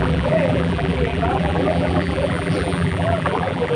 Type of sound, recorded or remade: remade